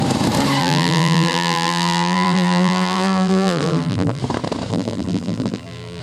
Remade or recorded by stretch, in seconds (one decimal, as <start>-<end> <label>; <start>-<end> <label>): 0.0-0.6 recorded; 0.6-4.2 remade; 4.2-4.7 recorded; 4.7-6.0 remade